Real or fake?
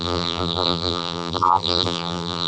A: fake